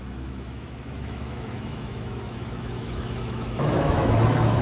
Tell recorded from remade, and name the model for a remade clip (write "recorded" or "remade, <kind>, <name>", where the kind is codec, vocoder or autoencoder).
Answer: remade, autoencoder, DAC-VAE